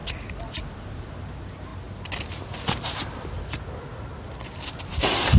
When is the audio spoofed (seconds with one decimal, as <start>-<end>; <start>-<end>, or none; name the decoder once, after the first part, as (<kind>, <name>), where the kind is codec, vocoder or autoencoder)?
none